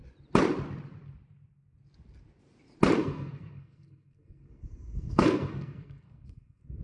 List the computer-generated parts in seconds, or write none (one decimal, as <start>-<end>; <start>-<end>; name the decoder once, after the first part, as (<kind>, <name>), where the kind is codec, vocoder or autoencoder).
3.0-6.8 (codec, SNAC)